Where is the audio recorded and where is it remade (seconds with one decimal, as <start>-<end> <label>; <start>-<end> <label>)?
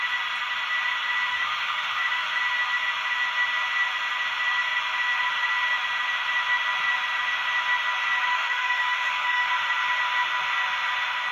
0.0-1.3 recorded; 1.3-2.4 remade; 2.4-8.3 recorded; 8.3-9.5 remade; 9.5-11.3 recorded